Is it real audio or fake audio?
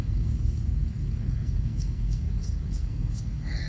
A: fake